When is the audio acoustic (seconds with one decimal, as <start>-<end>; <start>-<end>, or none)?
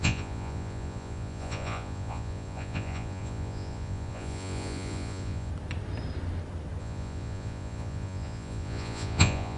5.5-6.8